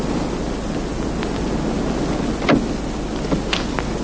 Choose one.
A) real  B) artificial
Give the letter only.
A